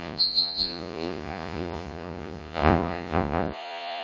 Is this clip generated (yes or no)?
yes